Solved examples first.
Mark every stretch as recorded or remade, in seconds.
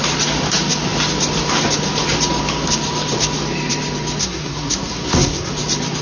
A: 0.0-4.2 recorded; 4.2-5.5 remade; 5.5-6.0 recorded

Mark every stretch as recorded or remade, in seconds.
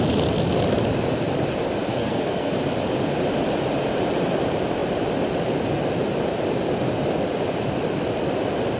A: 0.0-1.9 recorded; 1.9-2.5 remade; 2.5-8.8 recorded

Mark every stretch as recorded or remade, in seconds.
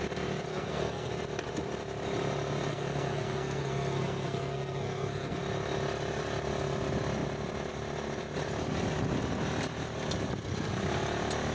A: 0.0-0.5 recorded; 0.5-1.1 remade; 1.1-2.7 recorded; 2.7-5.4 remade; 5.4-11.5 recorded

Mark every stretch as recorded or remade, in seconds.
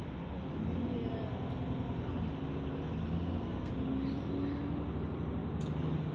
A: 0.0-3.1 recorded; 3.1-3.7 remade; 3.7-6.1 recorded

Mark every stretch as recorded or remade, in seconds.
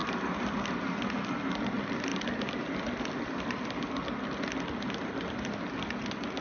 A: 0.0-6.4 recorded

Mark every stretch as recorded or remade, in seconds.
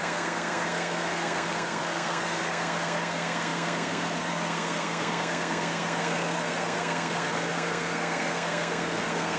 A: 0.0-9.4 remade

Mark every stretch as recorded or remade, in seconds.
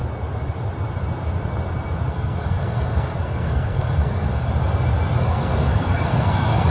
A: 0.0-2.1 recorded; 2.1-4.5 remade; 4.5-5.2 recorded; 5.2-6.7 remade